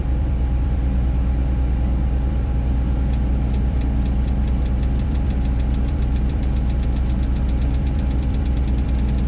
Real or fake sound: fake